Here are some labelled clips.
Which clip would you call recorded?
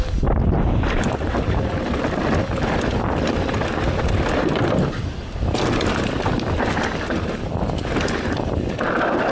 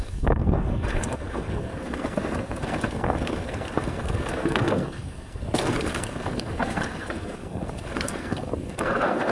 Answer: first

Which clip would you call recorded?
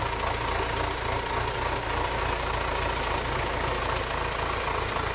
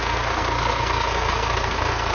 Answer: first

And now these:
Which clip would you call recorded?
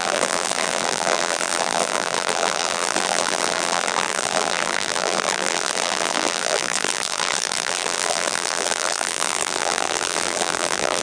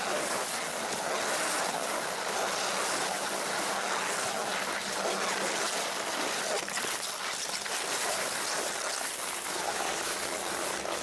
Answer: second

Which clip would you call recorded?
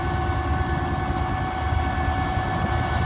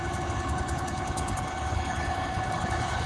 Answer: first